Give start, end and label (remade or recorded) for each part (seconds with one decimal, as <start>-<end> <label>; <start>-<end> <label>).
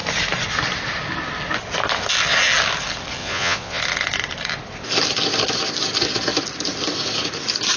0.0-3.2 recorded; 3.2-3.8 remade; 3.8-7.8 recorded